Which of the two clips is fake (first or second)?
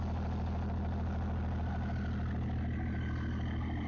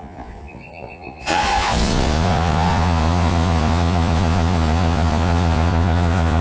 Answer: second